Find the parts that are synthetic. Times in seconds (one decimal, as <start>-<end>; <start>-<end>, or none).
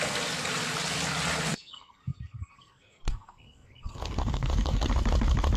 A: 1.5-4.9